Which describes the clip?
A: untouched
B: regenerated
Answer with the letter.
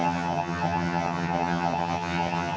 B